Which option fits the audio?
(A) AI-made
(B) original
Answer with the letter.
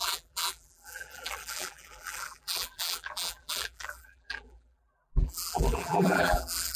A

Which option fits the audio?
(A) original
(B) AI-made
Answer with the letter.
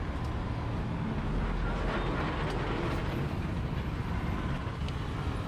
A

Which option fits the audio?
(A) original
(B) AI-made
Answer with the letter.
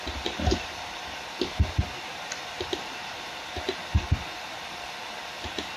B